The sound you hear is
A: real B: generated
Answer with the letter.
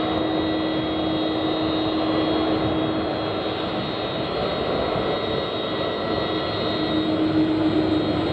A